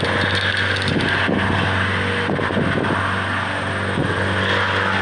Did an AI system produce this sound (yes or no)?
no